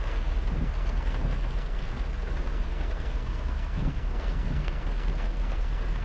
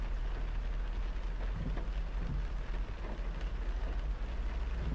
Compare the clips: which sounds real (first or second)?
second